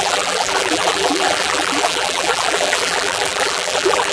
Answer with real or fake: fake